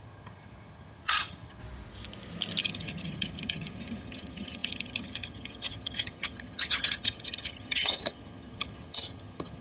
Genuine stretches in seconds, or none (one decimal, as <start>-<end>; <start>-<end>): 1.6-2.6

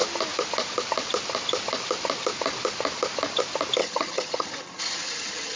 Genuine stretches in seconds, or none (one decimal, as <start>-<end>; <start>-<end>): 0.0-3.8

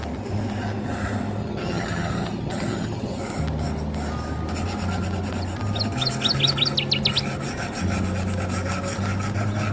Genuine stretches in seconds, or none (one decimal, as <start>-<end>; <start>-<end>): 0.0-1.4; 3.2-9.7

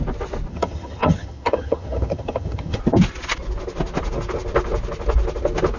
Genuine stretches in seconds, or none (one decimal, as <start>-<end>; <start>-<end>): 0.0-0.5; 2.8-5.8

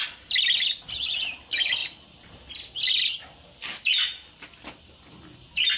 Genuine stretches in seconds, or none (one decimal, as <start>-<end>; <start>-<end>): 0.0-5.8

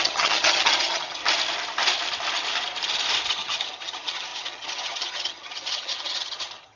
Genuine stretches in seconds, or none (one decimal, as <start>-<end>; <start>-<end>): 1.2-3.3

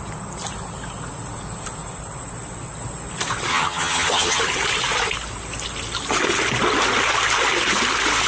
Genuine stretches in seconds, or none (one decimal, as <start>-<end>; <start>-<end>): 0.0-3.5; 4.4-8.3

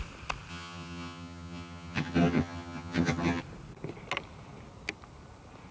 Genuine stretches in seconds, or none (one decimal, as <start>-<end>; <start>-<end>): 0.0-0.5; 3.4-5.7